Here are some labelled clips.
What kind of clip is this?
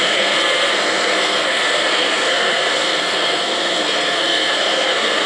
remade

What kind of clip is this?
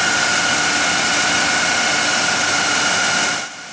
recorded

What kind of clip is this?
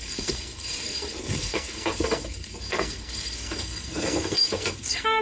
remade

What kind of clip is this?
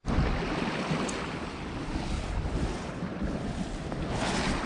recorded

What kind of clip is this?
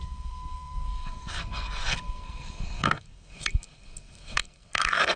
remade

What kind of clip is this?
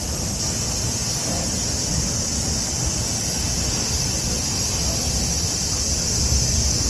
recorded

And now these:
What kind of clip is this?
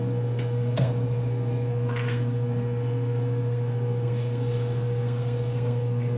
remade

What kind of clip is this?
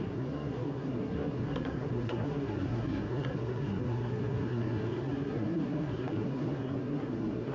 remade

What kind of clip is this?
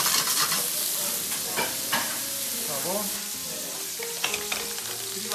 recorded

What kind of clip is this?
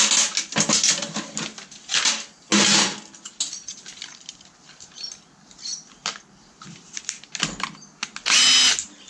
recorded